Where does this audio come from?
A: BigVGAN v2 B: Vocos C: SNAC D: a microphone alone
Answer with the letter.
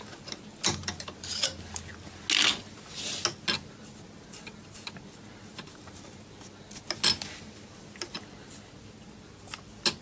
D